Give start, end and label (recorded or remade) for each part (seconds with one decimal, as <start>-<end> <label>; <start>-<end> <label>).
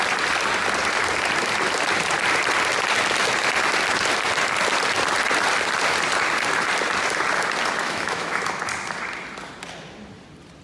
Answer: 0.0-7.8 recorded; 7.8-8.6 remade; 8.6-10.6 recorded